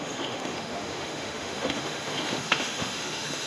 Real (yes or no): no